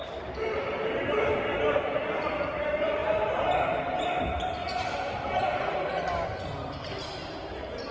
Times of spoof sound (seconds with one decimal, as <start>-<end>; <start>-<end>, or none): 0.0-7.2